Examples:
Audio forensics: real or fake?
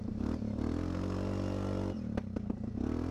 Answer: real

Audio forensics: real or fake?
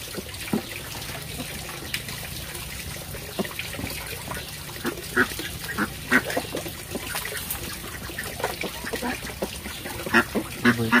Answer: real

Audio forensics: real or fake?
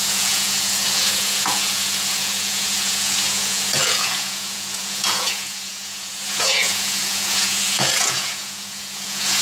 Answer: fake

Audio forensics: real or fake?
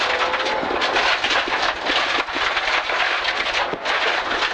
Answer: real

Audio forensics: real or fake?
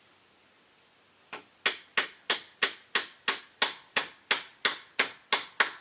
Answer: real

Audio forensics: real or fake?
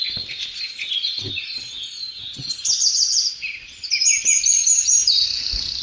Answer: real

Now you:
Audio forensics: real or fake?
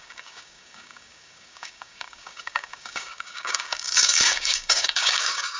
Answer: fake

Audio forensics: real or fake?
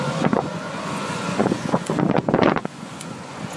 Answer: fake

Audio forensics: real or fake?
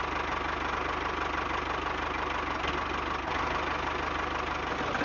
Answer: real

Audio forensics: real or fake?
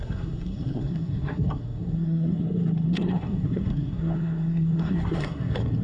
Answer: fake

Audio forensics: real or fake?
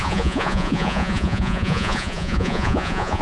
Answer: fake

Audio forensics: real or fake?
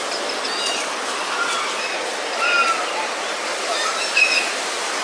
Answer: real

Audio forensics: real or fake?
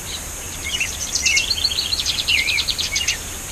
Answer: fake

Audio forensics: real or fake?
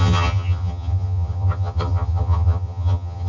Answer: fake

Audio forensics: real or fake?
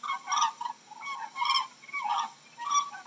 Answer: real